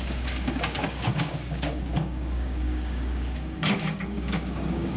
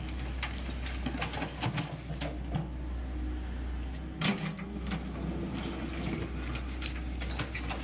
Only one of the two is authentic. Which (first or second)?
second